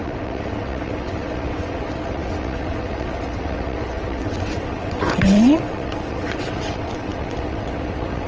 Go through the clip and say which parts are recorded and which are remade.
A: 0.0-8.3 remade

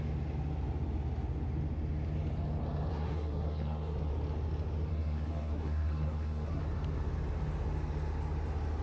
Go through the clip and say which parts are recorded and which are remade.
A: 0.0-2.9 recorded; 2.9-4.1 remade; 4.1-4.9 recorded; 4.9-6.6 remade; 6.6-8.8 recorded